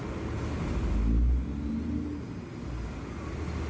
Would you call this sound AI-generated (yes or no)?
no